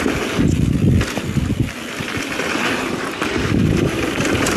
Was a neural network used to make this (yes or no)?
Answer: no